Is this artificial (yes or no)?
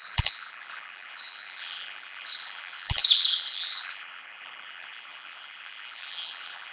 yes